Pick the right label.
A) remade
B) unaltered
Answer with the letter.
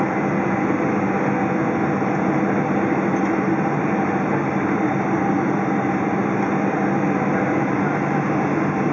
B